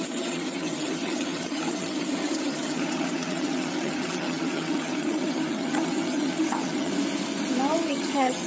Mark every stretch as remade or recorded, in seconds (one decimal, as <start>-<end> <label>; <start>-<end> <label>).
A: 0.0-6.9 remade; 6.9-7.9 recorded; 7.9-8.5 remade